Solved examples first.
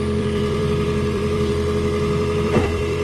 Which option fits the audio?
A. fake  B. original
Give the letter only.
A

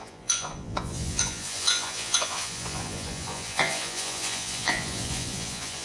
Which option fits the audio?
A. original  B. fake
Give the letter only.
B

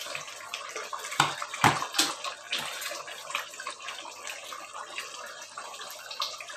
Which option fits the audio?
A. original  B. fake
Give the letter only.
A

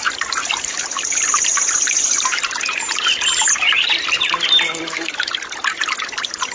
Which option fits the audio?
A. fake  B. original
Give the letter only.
B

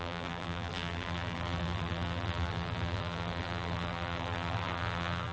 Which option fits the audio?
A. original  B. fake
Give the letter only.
B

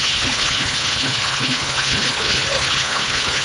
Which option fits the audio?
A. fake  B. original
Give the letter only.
A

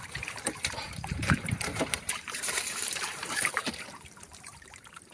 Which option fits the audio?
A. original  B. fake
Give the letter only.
B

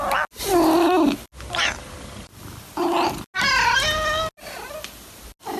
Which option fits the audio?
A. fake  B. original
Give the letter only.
B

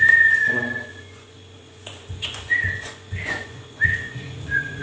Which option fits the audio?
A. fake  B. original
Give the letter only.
A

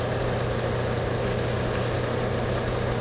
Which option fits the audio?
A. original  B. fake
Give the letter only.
A